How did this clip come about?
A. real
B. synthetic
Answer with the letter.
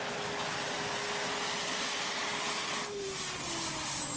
A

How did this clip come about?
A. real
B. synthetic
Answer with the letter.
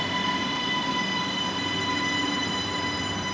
A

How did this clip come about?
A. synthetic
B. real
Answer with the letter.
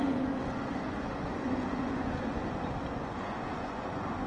A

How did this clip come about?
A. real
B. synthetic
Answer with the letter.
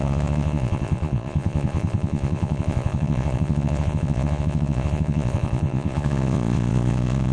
B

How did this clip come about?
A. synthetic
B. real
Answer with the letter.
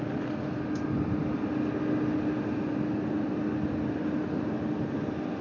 B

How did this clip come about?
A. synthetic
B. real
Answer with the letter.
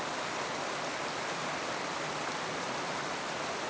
B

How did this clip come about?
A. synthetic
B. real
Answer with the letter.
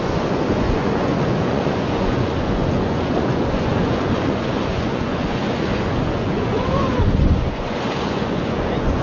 A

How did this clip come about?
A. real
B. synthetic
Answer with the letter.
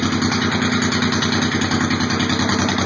A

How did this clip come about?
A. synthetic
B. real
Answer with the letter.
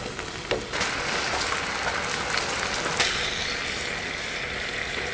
B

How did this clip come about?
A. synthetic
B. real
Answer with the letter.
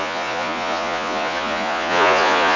A